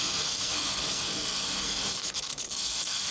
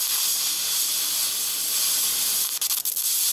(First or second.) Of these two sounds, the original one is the second